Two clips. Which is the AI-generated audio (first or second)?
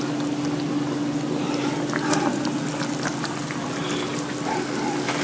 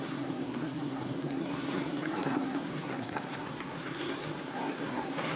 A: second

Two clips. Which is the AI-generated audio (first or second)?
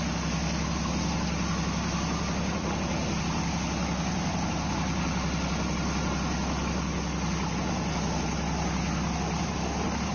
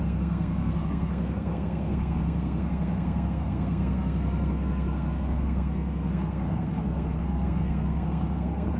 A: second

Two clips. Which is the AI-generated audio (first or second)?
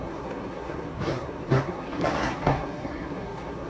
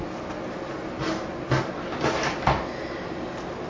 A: first